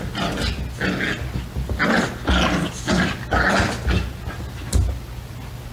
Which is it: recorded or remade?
recorded